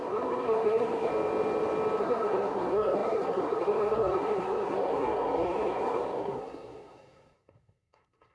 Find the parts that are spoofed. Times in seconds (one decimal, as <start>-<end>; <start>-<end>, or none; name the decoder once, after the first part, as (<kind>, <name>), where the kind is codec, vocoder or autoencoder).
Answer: 0.0-1.1 (codec, SNAC); 2.0-8.3